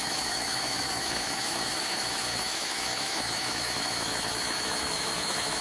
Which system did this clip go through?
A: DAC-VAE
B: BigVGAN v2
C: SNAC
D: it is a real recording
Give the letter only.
A